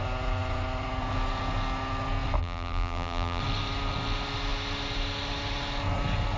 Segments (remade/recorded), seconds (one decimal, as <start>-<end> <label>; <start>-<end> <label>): 0.0-2.4 recorded; 2.4-3.4 remade; 3.4-6.4 recorded